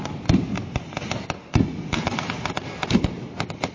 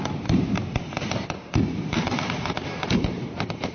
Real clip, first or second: first